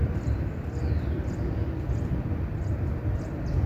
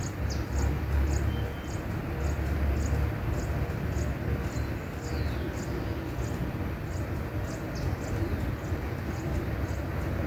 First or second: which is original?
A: second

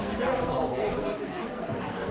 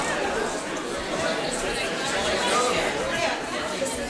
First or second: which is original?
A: second